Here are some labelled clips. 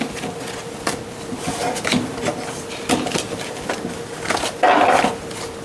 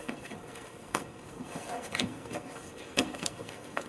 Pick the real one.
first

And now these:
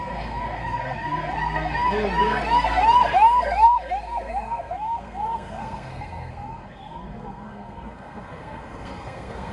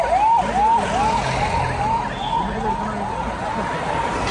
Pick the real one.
second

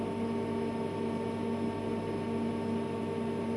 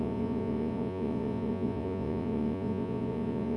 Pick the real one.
first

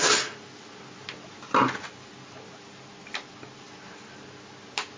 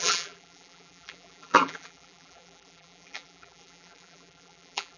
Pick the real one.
first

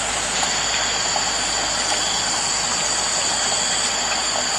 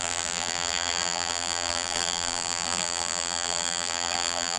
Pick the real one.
first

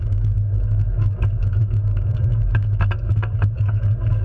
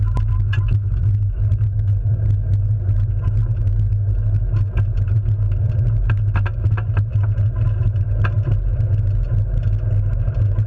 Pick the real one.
second